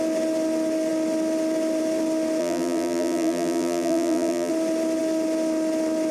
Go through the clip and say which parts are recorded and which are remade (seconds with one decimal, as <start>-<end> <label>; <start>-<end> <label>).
0.0-2.4 recorded; 2.4-4.5 remade; 4.5-6.1 recorded